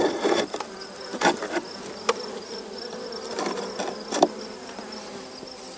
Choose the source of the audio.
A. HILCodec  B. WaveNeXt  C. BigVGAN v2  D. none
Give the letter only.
C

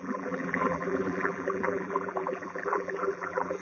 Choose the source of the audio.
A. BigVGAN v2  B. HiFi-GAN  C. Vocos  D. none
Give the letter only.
A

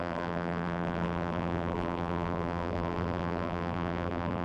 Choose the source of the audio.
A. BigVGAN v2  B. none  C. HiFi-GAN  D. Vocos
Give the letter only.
A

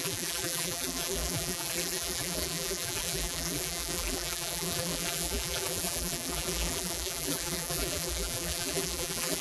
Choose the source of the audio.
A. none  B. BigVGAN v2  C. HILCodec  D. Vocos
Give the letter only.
B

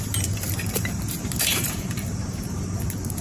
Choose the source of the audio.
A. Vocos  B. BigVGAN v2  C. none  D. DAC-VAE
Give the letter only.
B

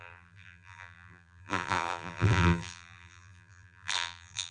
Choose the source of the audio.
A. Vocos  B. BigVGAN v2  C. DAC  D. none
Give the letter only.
B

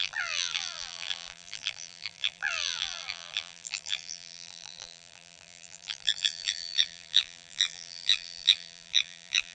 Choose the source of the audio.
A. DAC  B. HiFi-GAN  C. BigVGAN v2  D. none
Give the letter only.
C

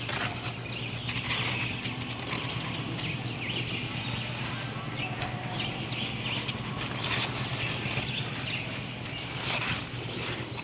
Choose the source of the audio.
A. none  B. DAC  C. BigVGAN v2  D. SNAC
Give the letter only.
A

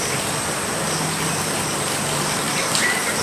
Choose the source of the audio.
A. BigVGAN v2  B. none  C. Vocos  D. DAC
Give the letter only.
B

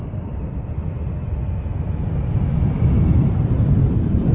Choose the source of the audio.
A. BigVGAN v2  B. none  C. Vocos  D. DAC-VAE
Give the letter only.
B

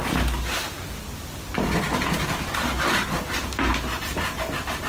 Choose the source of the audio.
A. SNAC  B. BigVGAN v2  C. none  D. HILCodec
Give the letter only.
C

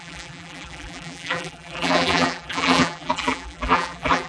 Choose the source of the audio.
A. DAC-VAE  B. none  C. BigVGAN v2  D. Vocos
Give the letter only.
C